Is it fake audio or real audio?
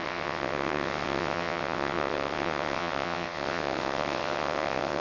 fake